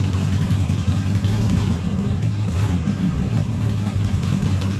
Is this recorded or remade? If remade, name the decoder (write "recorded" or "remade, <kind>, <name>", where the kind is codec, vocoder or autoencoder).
remade, codec, SNAC